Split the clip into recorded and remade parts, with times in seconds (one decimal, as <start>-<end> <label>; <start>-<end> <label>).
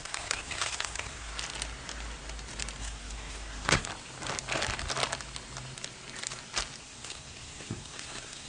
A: 0.0-1.3 remade; 1.3-2.8 recorded; 2.8-3.9 remade; 3.9-6.8 recorded; 6.8-8.5 remade